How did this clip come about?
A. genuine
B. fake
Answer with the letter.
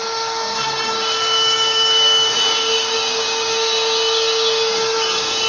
B